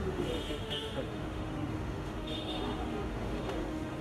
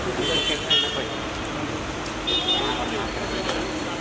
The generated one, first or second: first